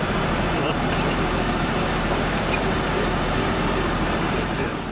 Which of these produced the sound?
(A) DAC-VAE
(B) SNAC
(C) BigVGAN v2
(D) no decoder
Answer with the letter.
C